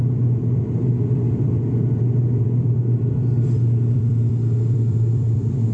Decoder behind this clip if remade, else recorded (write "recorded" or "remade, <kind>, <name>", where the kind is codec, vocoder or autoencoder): remade, vocoder, BigVGAN v2